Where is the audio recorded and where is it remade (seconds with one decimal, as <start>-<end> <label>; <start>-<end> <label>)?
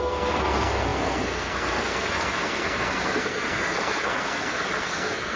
0.0-5.4 remade